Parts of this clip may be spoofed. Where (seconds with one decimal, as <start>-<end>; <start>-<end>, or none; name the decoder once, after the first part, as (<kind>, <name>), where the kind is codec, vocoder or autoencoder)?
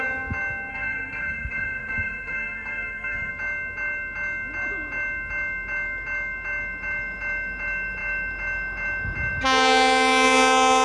0.7-3.3 (codec, SNAC)